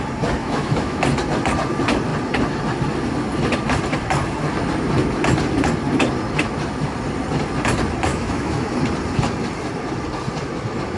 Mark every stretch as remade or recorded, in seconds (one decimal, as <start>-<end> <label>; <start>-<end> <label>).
0.0-0.4 recorded; 0.4-1.0 remade; 1.0-8.1 recorded; 8.1-8.7 remade; 8.7-11.0 recorded